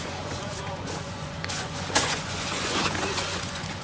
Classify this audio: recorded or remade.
remade